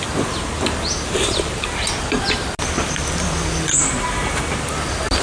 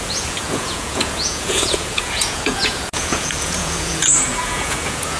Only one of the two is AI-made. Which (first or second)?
second